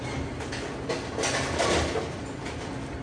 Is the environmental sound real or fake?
real